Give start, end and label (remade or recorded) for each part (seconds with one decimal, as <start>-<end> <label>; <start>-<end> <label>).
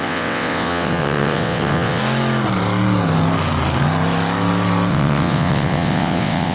0.0-2.0 remade; 2.0-4.9 recorded; 4.9-6.5 remade